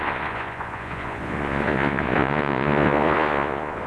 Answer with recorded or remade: remade